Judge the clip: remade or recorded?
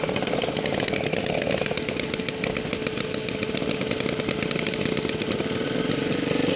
recorded